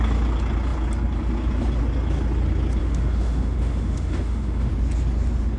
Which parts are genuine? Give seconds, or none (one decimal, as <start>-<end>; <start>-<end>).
0.0-2.8; 4.7-5.6